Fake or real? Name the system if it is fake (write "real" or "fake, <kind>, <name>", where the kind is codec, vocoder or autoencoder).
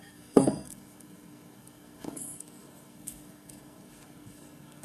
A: fake, codec, SNAC